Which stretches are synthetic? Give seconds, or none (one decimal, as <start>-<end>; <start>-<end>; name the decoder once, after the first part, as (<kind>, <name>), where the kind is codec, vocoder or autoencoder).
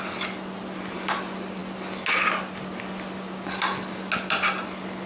none